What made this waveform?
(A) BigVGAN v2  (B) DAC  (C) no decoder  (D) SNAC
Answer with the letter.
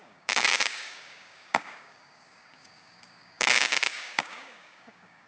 B